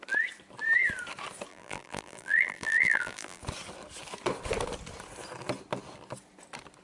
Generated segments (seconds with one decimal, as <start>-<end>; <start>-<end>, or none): 1.5-3.4